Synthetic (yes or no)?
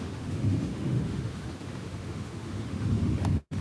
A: yes